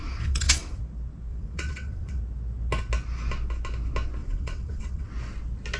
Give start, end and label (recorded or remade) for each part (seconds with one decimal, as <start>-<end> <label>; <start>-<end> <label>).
0.0-0.8 remade; 0.8-1.3 recorded; 1.3-2.2 remade; 2.2-4.2 recorded; 4.2-5.1 remade; 5.1-5.8 recorded